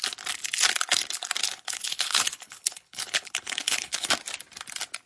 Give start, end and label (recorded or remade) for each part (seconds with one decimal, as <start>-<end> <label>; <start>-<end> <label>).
0.0-1.4 recorded; 1.4-4.1 remade; 4.1-5.1 recorded